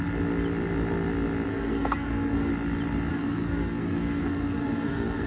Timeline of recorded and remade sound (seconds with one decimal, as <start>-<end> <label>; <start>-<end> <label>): 0.0-1.5 recorded; 1.5-2.5 remade; 2.5-3.1 recorded; 3.1-5.3 remade